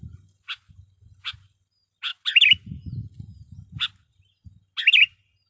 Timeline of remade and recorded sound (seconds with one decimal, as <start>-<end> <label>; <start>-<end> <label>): 0.0-5.5 recorded